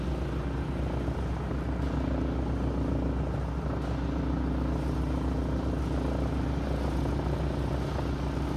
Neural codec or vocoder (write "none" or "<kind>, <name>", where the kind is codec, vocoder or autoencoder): none